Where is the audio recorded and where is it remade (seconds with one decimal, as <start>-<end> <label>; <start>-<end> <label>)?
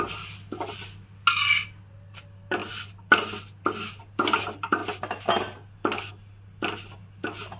0.0-7.6 recorded